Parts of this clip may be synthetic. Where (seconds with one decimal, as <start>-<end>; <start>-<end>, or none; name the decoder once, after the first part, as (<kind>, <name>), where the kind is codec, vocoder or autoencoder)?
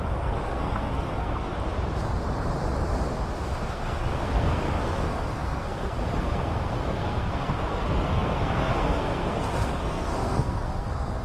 0.0-1.5 (codec, SNAC); 3.6-11.2